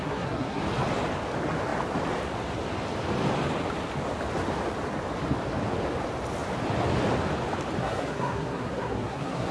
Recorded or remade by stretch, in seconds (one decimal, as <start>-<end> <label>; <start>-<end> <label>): 0.0-0.6 remade; 0.6-7.8 recorded; 7.8-9.5 remade